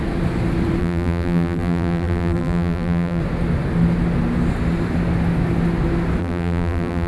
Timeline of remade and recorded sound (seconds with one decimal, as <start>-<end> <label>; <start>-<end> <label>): 0.0-0.8 recorded; 0.8-3.2 remade; 3.2-6.2 recorded; 6.2-7.1 remade